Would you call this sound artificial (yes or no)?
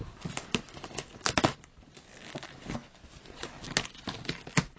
no